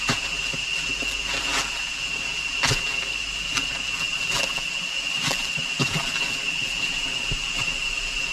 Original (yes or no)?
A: yes